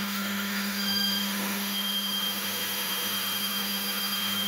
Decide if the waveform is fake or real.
fake